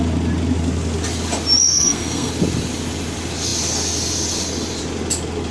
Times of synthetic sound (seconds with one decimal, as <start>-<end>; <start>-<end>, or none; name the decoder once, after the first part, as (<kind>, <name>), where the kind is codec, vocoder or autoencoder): 1.6-2.3 (codec, SNAC)